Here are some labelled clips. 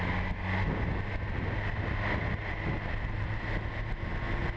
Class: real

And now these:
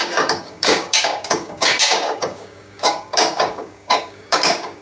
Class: fake